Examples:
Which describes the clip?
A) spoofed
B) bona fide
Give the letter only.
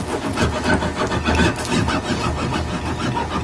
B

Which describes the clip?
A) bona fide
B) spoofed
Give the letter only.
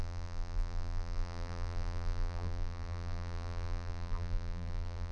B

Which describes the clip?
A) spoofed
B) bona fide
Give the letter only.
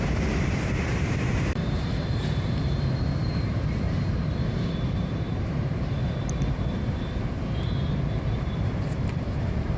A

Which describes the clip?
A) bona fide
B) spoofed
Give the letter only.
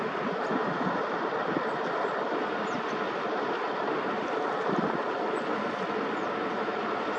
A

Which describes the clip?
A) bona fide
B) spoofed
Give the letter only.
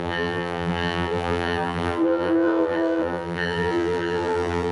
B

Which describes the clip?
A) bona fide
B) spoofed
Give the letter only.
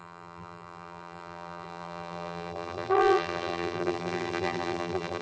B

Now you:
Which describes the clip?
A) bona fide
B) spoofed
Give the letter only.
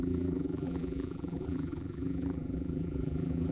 B